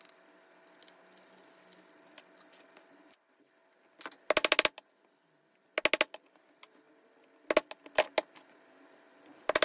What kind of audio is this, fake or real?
real